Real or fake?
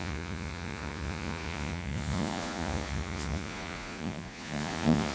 fake